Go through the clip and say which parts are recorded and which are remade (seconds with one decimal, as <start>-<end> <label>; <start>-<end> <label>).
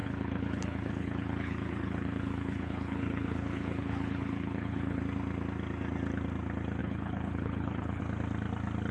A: 0.0-5.0 remade; 5.0-6.8 recorded; 6.8-8.0 remade; 8.0-8.9 recorded